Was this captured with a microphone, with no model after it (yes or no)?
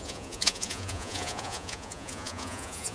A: no